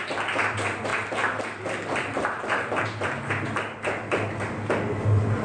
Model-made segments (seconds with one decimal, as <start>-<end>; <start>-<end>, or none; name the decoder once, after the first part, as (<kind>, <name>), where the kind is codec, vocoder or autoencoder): none